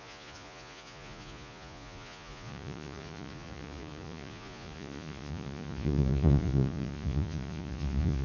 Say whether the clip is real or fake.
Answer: fake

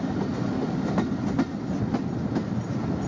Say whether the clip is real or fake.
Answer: real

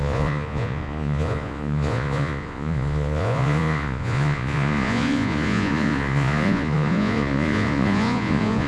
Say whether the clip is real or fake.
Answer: fake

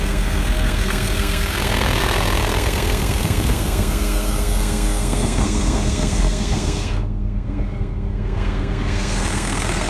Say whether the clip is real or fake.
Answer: fake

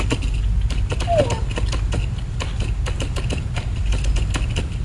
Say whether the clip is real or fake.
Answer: real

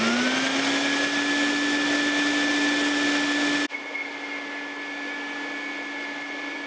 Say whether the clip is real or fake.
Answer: real